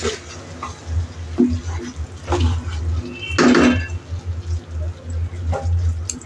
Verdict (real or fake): real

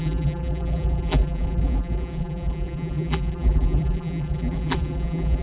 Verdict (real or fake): fake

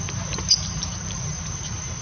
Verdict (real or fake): fake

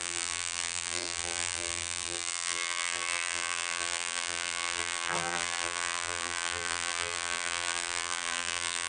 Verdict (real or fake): fake